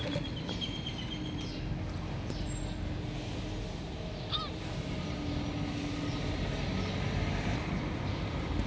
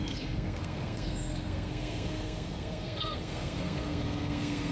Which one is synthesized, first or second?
second